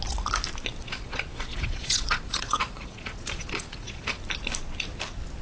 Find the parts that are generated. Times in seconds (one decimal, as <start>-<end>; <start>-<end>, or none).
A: 0.8-4.0